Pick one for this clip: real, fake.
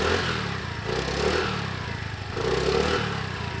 real